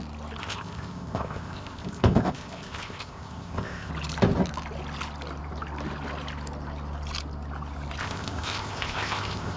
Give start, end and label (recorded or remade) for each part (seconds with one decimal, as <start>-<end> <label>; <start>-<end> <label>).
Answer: 0.0-0.4 recorded; 0.4-3.9 remade; 3.9-8.0 recorded; 8.0-9.6 remade